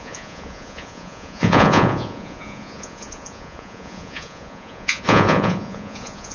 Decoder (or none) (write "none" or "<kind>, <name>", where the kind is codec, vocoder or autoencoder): vocoder, Vocos